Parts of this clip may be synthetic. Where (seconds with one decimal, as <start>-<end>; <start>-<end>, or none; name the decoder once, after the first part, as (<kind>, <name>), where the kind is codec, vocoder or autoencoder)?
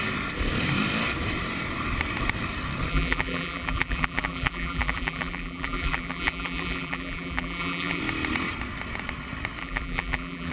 2.9-8.0 (vocoder, BigVGAN v2); 9.6-10.5